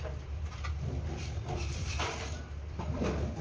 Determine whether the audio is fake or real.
fake